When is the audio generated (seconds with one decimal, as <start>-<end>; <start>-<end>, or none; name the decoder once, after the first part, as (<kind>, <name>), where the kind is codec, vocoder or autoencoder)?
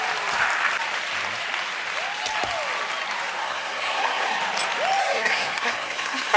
3.4-4.4 (codec, SNAC); 5.0-6.4